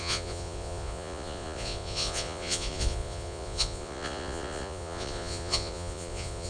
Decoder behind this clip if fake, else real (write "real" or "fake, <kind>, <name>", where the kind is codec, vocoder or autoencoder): fake, vocoder, Vocos